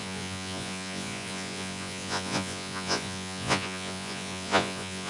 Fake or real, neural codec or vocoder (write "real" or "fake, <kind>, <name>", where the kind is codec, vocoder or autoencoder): fake, vocoder, Vocos